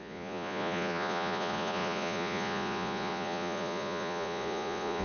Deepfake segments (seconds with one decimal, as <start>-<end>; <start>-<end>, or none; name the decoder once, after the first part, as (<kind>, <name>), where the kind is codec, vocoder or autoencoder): 0.0-5.0 (vocoder, Vocos)